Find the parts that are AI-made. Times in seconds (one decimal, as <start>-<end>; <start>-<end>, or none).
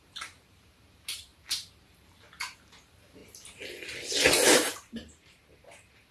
0.0-3.2; 4.3-6.1